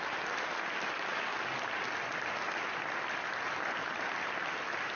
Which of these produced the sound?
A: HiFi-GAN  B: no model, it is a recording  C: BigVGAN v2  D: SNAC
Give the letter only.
B